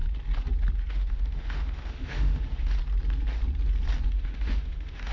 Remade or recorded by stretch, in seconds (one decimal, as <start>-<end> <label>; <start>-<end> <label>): 0.0-0.9 recorded; 0.9-2.7 remade; 2.7-4.1 recorded; 4.1-5.1 remade